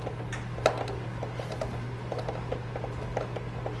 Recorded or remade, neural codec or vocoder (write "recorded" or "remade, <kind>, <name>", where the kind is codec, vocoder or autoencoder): recorded